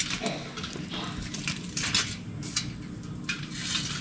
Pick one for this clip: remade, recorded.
recorded